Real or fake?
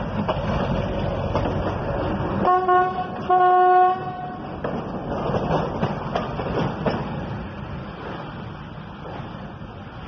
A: real